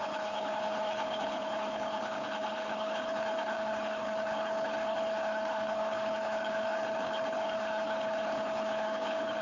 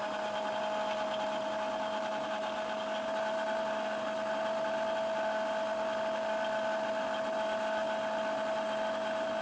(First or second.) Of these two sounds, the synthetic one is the first